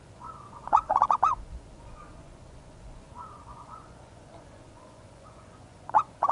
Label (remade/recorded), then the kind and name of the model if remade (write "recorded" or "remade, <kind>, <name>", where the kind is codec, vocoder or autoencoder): remade, vocoder, Vocos